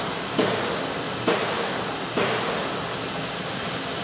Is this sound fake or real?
fake